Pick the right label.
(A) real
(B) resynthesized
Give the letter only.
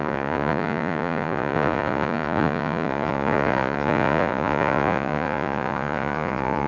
B